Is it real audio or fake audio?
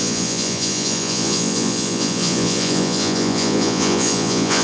fake